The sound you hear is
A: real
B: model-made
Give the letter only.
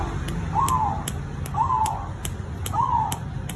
A